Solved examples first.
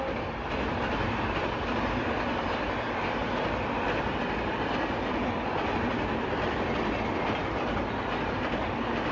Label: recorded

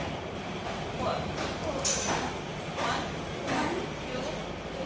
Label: recorded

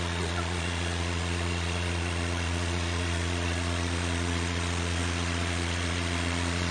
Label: remade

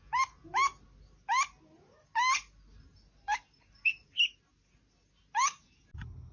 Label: recorded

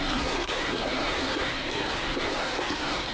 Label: remade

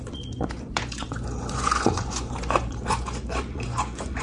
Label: remade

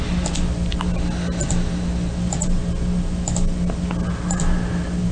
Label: recorded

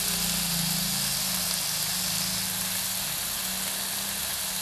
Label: recorded